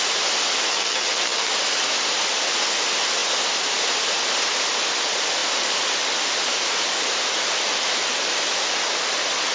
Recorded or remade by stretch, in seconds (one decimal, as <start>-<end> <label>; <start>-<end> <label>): 0.0-0.7 recorded; 0.7-1.5 remade; 1.5-9.5 recorded